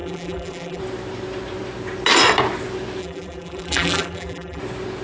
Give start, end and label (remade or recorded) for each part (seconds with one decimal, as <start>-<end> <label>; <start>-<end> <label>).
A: 0.0-0.8 remade; 0.8-3.0 recorded; 3.0-4.6 remade; 4.6-5.0 recorded